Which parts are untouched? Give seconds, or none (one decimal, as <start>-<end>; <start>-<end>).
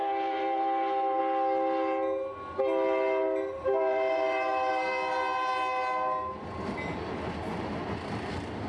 1.2-3.5; 4.7-8.7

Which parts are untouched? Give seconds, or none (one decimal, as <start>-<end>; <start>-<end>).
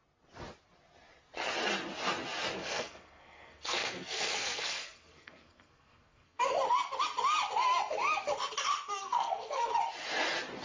0.0-2.6; 6.4-9.0; 9.7-10.6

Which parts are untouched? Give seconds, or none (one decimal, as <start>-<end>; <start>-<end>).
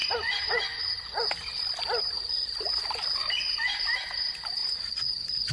0.8-5.5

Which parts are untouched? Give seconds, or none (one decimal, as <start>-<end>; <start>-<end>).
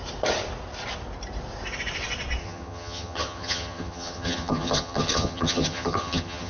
0.0-2.4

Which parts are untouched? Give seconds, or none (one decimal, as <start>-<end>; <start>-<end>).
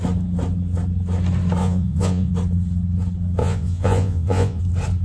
0.0-1.6; 2.3-3.4; 4.6-5.0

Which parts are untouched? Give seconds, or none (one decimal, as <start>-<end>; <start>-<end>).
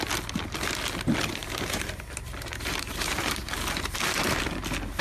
0.0-1.4; 4.4-5.0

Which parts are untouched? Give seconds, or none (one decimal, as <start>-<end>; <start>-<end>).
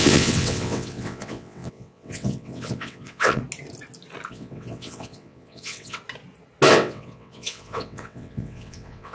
3.4-4.3; 6.0-6.7